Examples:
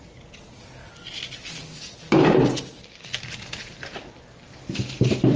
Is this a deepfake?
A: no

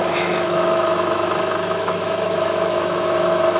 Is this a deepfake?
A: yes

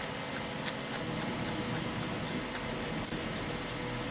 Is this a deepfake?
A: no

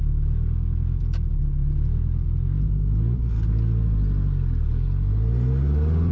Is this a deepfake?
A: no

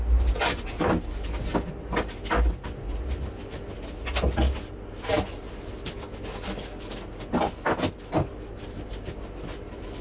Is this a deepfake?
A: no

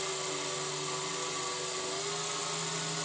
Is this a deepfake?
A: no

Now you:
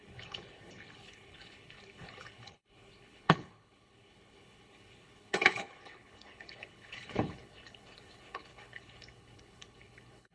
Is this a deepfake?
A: yes